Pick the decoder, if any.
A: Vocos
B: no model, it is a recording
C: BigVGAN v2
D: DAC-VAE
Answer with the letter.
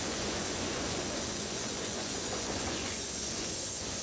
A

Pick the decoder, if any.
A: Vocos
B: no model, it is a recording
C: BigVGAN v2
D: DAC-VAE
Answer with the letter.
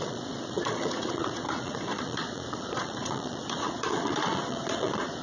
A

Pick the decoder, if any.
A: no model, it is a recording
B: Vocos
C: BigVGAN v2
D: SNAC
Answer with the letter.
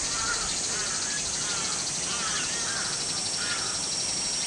A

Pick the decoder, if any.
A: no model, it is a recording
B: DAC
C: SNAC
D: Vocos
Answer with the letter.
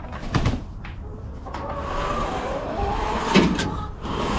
A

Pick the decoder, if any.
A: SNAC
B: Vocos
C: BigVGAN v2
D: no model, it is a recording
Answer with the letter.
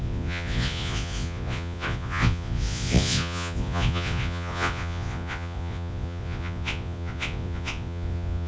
B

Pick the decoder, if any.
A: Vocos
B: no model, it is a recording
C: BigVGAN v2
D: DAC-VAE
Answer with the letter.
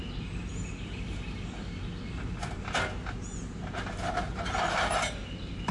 B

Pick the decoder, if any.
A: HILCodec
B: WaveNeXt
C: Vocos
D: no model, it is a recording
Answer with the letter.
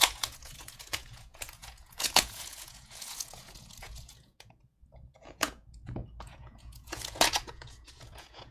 C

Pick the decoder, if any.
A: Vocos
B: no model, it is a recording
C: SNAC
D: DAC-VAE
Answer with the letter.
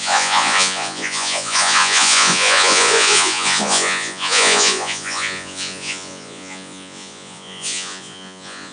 A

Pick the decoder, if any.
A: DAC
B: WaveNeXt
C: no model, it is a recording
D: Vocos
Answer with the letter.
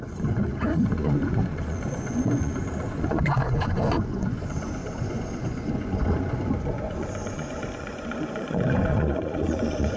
D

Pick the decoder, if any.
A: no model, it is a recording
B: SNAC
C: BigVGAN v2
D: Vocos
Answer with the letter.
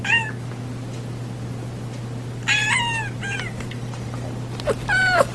A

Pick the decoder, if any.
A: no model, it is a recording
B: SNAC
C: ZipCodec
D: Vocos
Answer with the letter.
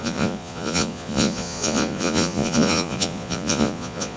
D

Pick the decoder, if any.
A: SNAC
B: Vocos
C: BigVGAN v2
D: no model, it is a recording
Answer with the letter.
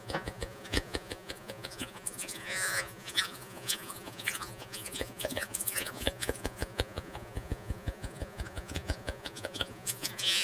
B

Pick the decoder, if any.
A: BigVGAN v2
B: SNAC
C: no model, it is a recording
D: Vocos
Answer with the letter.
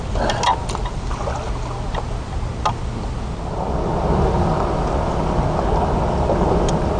C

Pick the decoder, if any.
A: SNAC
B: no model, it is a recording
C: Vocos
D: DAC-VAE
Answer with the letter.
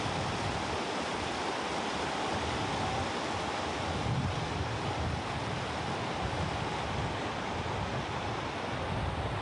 B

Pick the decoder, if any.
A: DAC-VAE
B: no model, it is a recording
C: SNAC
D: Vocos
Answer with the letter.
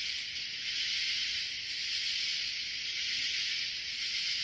B